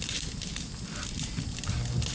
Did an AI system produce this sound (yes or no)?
no